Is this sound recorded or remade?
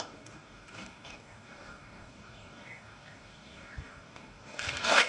remade